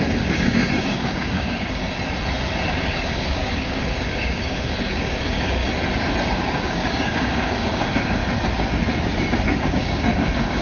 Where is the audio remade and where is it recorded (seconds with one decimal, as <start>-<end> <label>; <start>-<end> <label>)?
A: 0.0-1.8 remade; 1.8-2.8 recorded; 2.8-5.6 remade; 5.6-6.3 recorded; 6.3-8.2 remade; 8.2-9.7 recorded; 9.7-10.6 remade